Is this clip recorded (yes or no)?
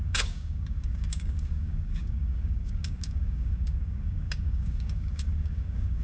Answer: no